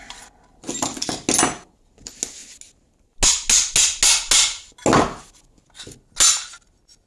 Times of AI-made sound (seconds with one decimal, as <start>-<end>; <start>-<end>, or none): none